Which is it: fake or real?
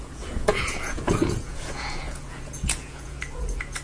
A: fake